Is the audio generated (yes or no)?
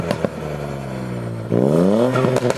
no